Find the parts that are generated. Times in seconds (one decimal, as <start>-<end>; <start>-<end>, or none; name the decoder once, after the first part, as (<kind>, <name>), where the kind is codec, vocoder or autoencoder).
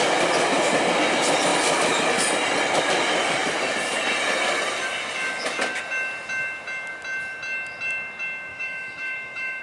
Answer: 8.5-9.6 (autoencoder, DAC-VAE)